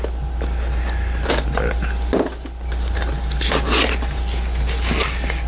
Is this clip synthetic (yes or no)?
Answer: no